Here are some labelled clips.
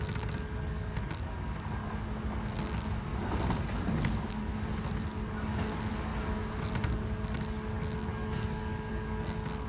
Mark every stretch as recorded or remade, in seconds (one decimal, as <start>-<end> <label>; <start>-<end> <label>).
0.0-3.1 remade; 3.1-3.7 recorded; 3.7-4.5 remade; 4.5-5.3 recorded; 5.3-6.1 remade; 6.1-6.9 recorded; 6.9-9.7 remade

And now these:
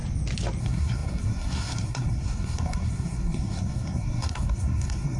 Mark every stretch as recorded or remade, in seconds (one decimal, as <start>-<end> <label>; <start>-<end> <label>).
0.0-0.6 recorded; 0.6-5.2 remade

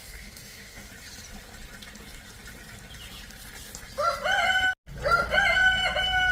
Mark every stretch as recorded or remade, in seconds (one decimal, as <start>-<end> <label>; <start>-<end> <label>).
0.0-0.9 remade; 0.9-6.3 recorded

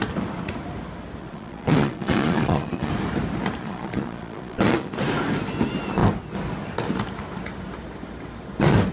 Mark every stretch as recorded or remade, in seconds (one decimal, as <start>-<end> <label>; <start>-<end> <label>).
0.0-1.2 recorded; 1.2-2.9 remade; 2.9-3.6 recorded; 3.6-4.9 remade; 4.9-8.9 recorded

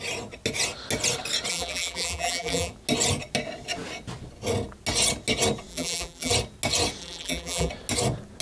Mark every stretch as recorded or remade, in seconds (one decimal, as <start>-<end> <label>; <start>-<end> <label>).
0.0-1.5 recorded; 1.5-2.7 remade; 2.7-5.7 recorded; 5.7-6.3 remade; 6.3-7.0 recorded; 7.0-7.7 remade; 7.7-8.4 recorded

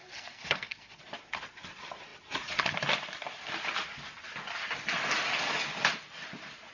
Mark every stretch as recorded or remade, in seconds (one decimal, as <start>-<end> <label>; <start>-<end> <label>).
0.0-1.0 remade; 1.0-6.7 recorded